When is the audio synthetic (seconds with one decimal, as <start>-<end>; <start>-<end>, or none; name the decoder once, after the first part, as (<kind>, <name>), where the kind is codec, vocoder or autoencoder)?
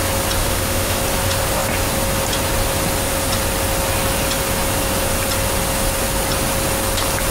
0.4-1.0 (autoencoder, DAC-VAE)